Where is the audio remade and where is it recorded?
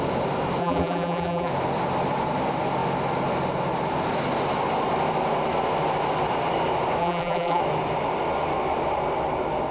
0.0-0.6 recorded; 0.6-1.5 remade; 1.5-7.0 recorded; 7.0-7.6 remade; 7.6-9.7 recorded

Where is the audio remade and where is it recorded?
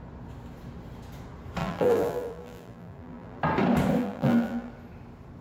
0.0-1.6 recorded; 1.6-3.4 remade; 3.4-4.0 recorded; 4.0-4.7 remade; 4.7-5.4 recorded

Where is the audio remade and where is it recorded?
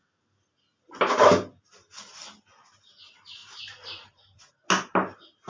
0.0-3.4 recorded; 3.4-4.5 remade; 4.5-5.5 recorded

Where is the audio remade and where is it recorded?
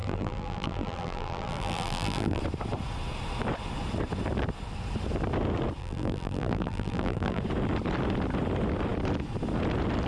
0.0-2.4 remade; 2.4-5.8 recorded; 5.8-7.4 remade; 7.4-10.1 recorded